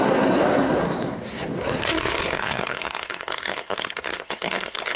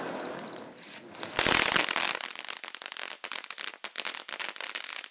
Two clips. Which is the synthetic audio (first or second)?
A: first